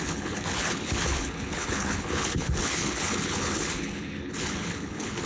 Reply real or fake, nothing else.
fake